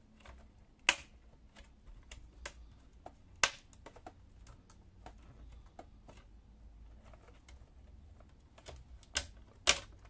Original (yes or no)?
yes